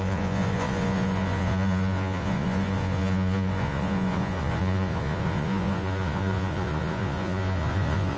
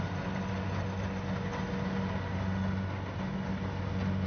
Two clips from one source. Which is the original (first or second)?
second